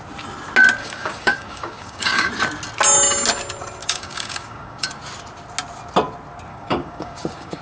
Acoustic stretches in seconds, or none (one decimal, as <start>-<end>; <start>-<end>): 0.0-0.8; 2.3-3.8; 5.0-6.5